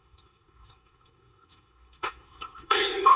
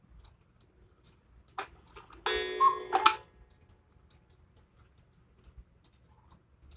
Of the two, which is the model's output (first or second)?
first